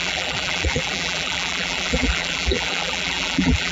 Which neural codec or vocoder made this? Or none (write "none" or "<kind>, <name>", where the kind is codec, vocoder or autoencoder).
vocoder, BigVGAN v2